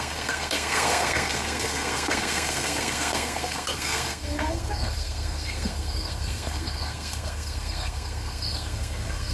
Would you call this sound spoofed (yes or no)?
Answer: yes